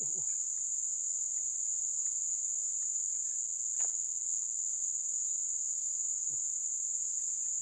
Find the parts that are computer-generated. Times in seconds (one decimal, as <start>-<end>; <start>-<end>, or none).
3.4-4.7